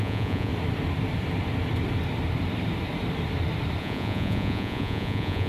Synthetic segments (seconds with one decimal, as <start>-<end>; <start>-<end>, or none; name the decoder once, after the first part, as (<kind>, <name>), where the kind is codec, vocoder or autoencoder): 0.0-0.5 (vocoder, Vocos); 3.8-5.5